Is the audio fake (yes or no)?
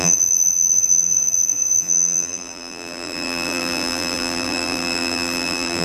yes